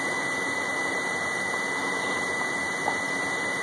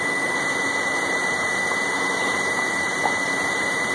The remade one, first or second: second